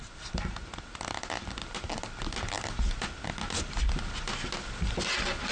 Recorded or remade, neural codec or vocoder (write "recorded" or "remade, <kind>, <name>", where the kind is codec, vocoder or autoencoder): recorded